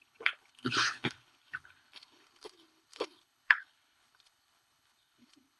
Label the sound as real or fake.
fake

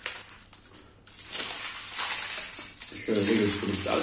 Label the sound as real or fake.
real